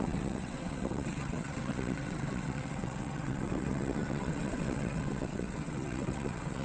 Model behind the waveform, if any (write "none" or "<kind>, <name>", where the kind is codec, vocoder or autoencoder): vocoder, WaveNeXt